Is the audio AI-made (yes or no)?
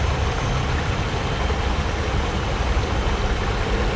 no